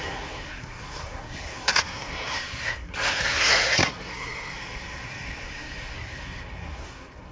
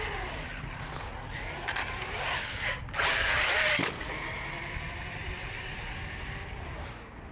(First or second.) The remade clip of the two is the first